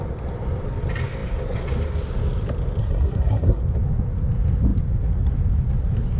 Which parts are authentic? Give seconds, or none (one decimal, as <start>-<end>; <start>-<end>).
0.0-2.8; 3.6-6.2